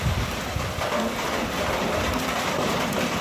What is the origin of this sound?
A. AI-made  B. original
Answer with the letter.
A